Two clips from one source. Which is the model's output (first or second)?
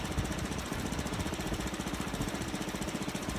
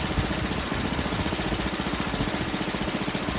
first